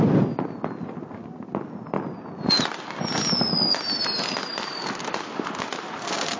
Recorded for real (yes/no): yes